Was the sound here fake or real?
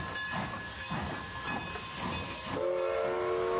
real